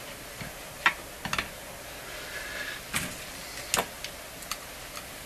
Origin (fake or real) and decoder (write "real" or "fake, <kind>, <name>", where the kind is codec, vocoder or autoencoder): real